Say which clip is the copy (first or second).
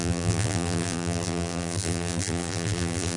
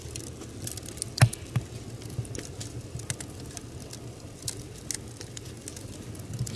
first